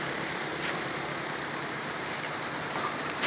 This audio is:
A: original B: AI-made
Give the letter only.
B